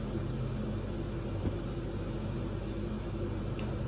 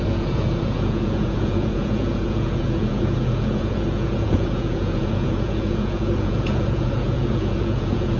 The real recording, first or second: first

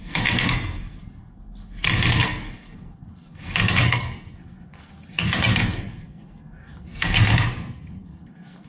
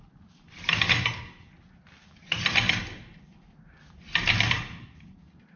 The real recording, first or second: second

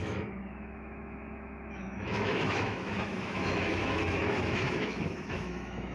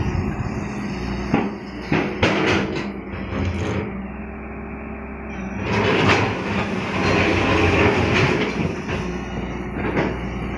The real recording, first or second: second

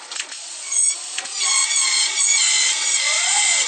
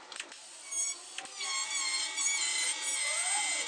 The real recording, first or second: second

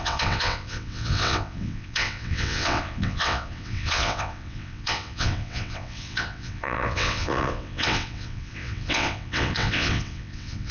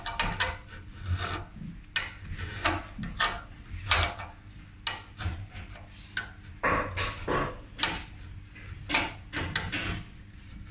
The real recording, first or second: second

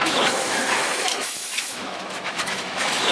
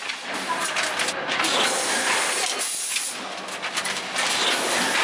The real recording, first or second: second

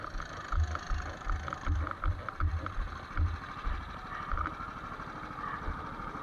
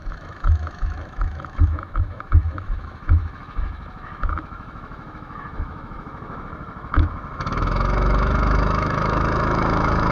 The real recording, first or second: first